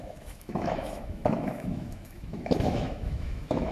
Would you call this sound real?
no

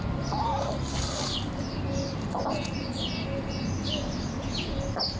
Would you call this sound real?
yes